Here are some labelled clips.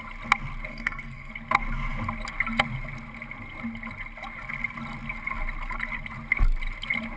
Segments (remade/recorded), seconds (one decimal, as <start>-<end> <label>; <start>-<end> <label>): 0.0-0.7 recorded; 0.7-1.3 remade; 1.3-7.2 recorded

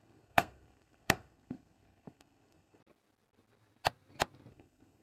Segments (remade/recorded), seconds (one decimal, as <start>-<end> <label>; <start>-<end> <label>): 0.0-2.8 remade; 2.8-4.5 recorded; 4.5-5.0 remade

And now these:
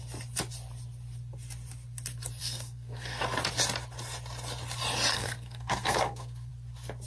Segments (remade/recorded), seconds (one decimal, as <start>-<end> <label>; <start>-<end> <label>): 0.0-2.4 recorded; 2.4-3.2 remade; 3.2-5.1 recorded; 5.1-6.5 remade; 6.5-7.1 recorded

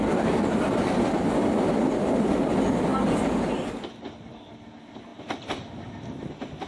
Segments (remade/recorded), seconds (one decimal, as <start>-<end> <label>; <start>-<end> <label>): 0.0-6.7 recorded